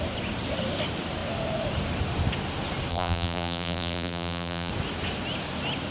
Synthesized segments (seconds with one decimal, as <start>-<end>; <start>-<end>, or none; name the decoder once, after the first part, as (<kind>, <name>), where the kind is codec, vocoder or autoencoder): 2.9-4.7 (vocoder, BigVGAN v2)